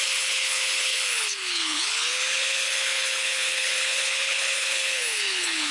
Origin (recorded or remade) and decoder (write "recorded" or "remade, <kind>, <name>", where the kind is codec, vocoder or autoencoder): remade, codec, HILCodec